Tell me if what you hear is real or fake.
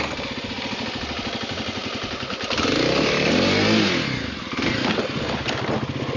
real